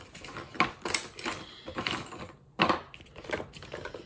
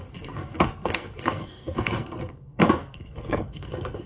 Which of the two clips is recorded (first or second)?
first